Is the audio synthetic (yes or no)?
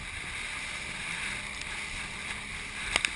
no